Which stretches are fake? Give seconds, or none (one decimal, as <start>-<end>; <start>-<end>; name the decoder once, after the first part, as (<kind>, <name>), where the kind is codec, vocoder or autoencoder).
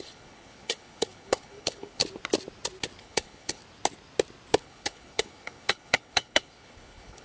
0.0-2.0 (codec, HILCodec); 3.0-3.6; 4.6-7.2